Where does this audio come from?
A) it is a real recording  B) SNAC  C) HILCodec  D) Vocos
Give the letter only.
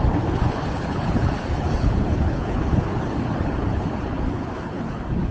C